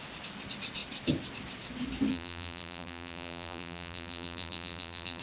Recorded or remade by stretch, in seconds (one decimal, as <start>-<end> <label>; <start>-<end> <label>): 0.0-2.1 recorded; 2.1-5.2 remade